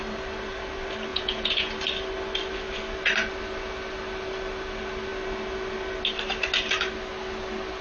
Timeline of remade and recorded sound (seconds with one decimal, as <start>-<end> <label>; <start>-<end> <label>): 0.0-1.1 recorded; 1.1-1.7 remade; 1.7-7.8 recorded